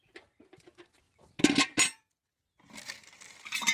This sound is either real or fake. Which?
real